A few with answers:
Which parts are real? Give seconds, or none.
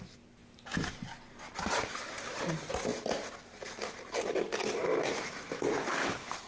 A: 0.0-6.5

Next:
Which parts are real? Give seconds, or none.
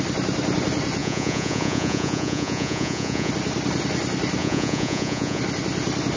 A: 0.0-1.0; 3.3-4.4; 5.4-6.2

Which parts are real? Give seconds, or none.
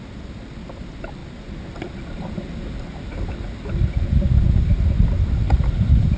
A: 0.0-6.2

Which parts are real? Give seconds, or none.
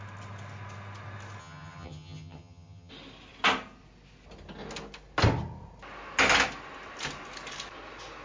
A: 0.0-1.4; 2.9-8.2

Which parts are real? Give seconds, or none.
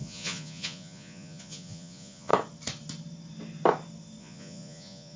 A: 2.3-4.2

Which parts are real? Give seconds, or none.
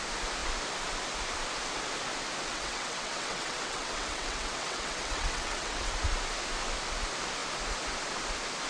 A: 0.0-2.5; 5.9-8.7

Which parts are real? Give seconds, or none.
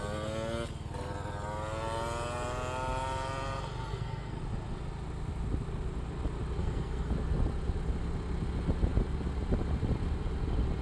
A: 0.0-3.9; 4.4-6.6; 7.1-10.8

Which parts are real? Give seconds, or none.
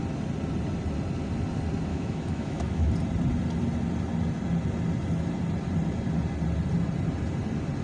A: 0.0-1.9; 2.9-7.8